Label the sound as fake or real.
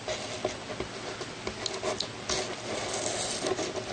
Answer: real